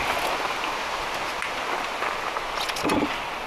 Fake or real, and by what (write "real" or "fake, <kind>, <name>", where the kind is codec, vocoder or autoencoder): real